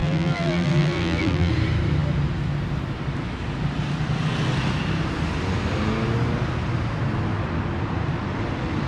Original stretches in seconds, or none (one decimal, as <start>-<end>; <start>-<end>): 1.5-8.9